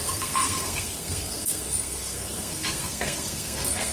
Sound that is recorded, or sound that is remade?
remade